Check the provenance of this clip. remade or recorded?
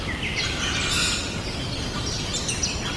remade